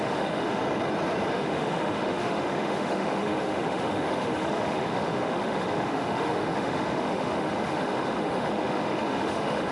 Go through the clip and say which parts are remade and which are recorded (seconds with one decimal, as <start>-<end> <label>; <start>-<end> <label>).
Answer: 0.0-0.6 remade; 0.6-1.3 recorded; 1.3-9.7 remade